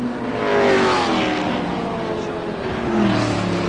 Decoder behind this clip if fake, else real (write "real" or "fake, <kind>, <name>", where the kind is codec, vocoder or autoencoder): real